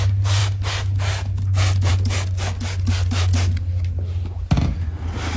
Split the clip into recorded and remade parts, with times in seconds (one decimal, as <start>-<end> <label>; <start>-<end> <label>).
0.0-5.4 recorded